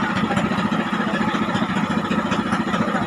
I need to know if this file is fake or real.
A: real